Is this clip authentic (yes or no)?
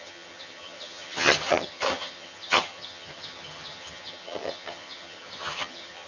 no